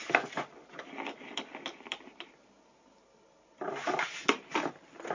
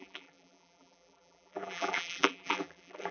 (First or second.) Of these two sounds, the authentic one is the first